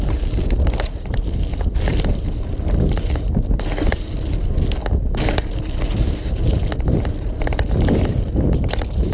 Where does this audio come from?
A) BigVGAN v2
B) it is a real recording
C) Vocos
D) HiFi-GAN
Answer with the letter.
B